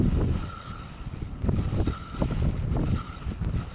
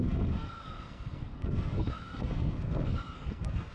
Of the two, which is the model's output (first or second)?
second